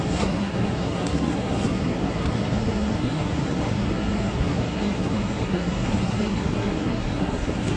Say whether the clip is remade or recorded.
remade